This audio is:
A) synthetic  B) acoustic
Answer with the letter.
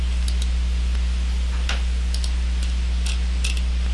B